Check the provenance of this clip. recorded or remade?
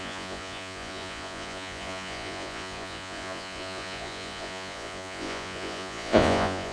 remade